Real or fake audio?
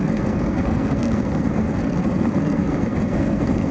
fake